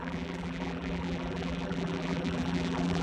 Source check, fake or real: fake